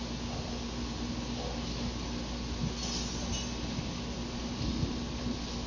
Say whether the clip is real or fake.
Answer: real